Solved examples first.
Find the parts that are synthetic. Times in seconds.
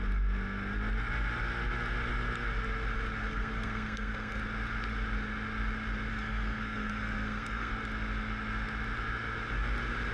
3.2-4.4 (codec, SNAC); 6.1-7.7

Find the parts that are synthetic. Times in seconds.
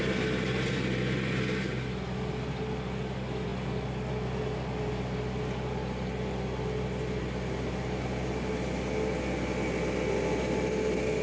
none